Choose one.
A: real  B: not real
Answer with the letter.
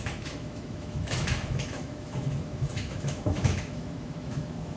B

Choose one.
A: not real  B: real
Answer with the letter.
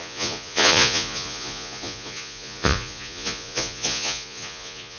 A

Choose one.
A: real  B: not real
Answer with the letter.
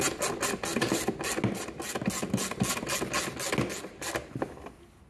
A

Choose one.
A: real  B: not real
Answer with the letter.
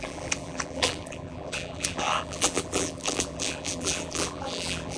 B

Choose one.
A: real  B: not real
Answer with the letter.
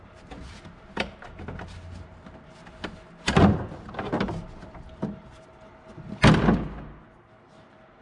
A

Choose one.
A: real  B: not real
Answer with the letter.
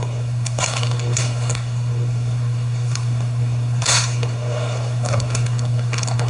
B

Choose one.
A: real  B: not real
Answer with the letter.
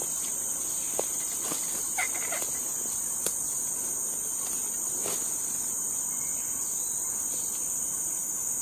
A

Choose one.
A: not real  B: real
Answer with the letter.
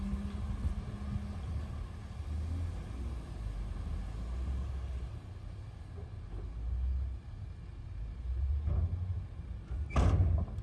B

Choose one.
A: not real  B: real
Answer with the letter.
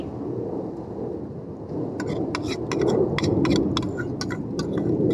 B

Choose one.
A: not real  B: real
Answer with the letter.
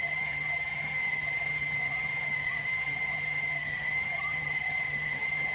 A